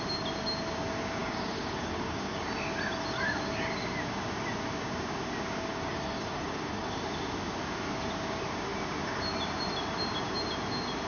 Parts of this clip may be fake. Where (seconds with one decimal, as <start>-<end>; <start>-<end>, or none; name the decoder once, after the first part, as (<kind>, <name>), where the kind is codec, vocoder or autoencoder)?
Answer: 1.2-2.4 (codec, DAC); 5.7-7.0